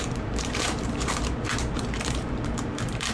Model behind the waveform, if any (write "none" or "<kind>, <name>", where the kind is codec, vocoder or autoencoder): vocoder, BigVGAN v2